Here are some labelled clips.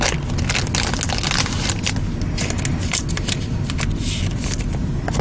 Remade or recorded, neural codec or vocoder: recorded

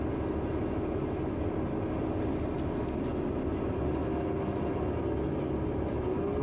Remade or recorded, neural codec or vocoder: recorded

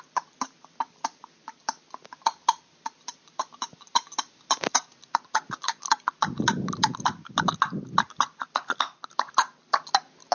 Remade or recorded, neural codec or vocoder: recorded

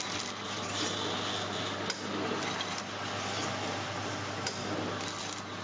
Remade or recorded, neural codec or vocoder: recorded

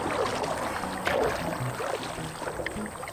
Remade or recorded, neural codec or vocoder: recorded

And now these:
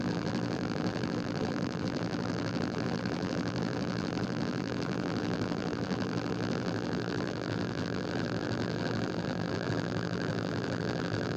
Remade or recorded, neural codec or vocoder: remade, vocoder, BigVGAN v2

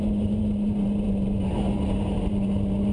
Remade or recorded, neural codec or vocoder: remade, vocoder, BigVGAN v2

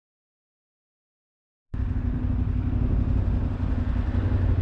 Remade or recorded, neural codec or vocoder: recorded